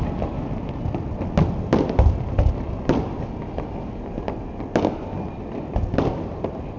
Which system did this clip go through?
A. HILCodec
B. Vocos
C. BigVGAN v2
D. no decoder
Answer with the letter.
D